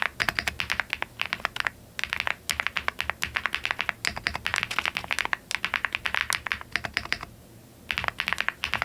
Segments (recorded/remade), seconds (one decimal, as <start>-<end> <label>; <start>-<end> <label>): 0.0-8.8 recorded